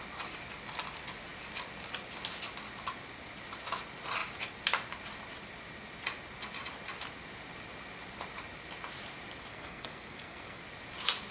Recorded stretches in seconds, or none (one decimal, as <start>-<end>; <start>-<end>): 0.0-9.5; 10.6-11.3